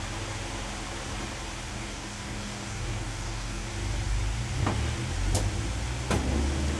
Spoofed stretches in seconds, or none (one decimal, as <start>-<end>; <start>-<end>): 1.7-3.7